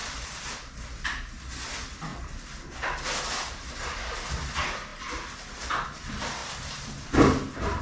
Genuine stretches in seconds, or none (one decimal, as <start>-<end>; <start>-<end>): 0.9-6.4